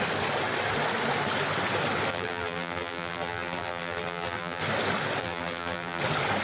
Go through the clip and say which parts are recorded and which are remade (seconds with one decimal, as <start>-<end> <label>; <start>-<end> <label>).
0.0-2.1 recorded; 2.1-4.6 remade; 4.6-5.2 recorded; 5.2-6.0 remade; 6.0-6.4 recorded